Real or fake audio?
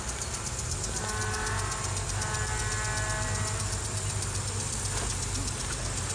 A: real